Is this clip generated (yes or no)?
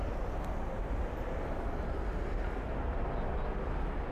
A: no